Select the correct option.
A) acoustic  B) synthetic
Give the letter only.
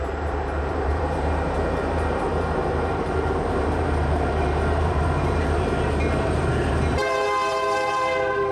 B